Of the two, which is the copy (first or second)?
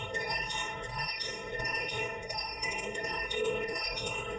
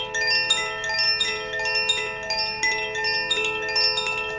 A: first